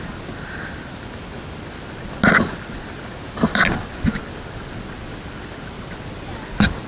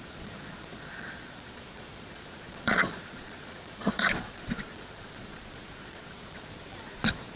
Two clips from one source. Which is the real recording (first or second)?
first